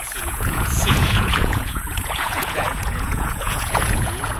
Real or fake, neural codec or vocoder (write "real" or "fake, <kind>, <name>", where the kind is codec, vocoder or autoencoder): fake, vocoder, Vocos